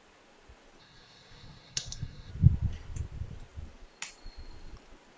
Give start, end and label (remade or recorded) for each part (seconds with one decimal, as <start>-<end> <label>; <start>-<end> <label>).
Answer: 0.0-0.8 recorded; 0.8-2.3 remade; 2.3-5.2 recorded

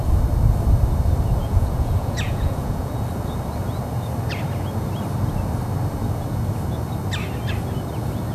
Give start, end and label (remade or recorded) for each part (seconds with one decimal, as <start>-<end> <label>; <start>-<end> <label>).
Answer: 0.0-1.4 recorded; 1.4-3.1 remade; 3.1-8.3 recorded

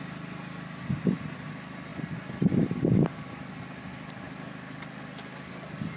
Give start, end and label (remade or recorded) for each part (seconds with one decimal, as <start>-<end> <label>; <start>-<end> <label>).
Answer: 0.0-6.0 recorded

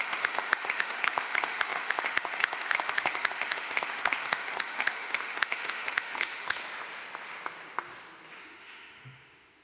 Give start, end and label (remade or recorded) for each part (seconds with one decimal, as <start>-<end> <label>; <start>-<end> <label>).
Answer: 0.0-6.6 remade; 6.6-8.4 recorded; 8.4-9.6 remade

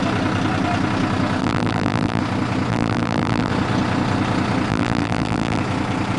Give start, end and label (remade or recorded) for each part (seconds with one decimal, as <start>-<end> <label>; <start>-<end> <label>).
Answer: 0.0-1.4 recorded; 1.4-2.2 remade; 2.2-2.7 recorded; 2.7-3.5 remade; 3.5-4.7 recorded; 4.7-5.6 remade; 5.6-6.2 recorded

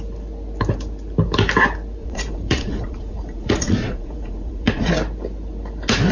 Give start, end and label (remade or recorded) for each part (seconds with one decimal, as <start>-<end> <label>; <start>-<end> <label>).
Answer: 0.0-2.0 recorded; 2.0-4.9 remade; 4.9-6.1 recorded

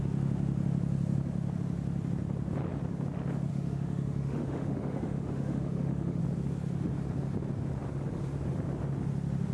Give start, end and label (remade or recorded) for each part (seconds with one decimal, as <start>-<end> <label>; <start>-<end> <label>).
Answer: 0.0-3.5 recorded; 3.5-6.2 remade; 6.2-9.5 recorded